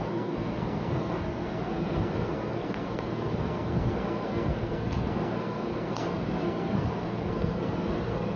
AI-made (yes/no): yes